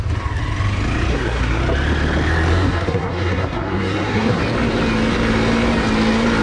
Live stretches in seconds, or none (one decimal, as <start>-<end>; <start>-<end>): 0.0-1.1; 1.6-2.5; 4.4-6.4